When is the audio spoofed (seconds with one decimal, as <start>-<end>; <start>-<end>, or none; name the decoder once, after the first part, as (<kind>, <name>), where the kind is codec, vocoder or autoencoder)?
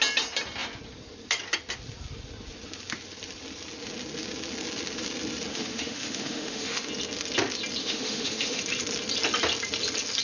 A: 5.5-6.9 (autoencoder, DAC-VAE); 7.8-8.6